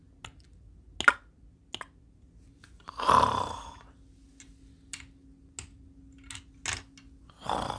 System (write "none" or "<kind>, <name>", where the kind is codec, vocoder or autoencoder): none